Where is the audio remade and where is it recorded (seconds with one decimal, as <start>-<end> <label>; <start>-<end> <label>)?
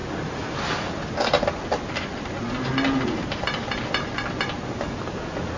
0.0-5.6 recorded